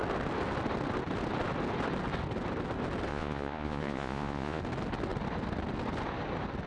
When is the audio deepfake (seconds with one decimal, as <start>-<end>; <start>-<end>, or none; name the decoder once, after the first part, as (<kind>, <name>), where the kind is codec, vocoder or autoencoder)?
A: 3.1-4.6 (vocoder, Vocos)